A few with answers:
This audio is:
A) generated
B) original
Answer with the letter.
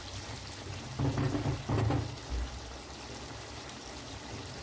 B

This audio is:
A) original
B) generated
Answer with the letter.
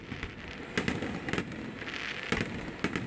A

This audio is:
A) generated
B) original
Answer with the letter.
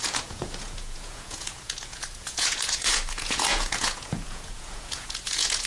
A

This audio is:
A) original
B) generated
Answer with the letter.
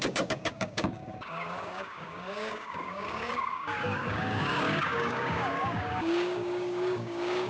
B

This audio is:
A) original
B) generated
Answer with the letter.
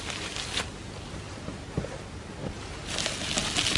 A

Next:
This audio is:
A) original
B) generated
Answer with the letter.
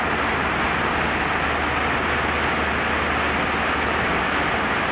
A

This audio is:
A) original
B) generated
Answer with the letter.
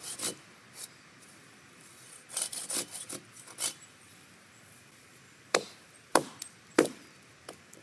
B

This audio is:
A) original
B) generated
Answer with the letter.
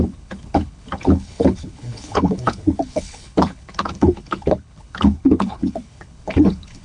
B